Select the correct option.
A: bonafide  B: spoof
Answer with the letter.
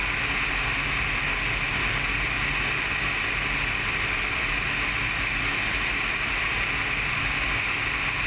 A